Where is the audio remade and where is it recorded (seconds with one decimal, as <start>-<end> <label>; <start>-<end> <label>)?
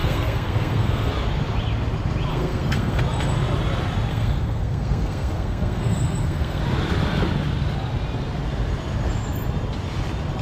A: 0.0-1.1 remade; 1.1-2.3 recorded; 2.3-3.0 remade; 3.0-4.1 recorded; 4.1-6.6 remade; 6.6-10.4 recorded